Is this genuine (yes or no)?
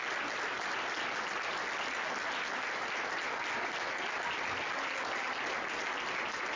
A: yes